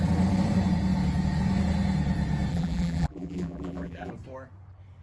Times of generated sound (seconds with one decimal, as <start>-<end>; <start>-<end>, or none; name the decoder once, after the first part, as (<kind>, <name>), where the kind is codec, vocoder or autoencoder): 2.5-4.1 (vocoder, BigVGAN v2)